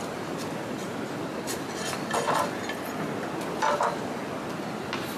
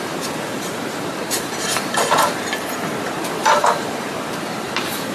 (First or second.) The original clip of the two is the first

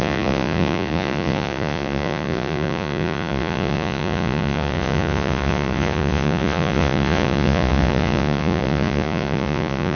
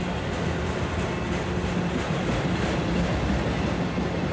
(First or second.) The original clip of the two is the second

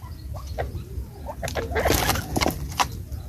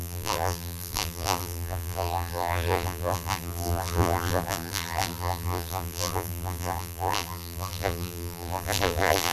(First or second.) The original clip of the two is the first